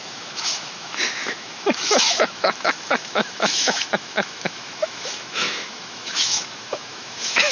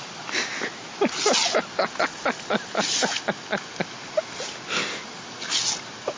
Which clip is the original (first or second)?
second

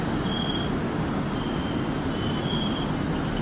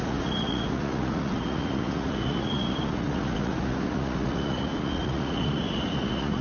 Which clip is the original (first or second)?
first